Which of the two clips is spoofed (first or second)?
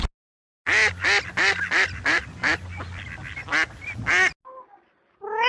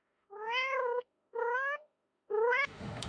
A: second